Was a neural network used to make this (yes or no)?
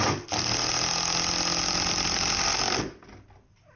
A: no